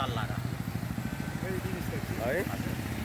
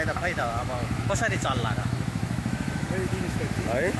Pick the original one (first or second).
first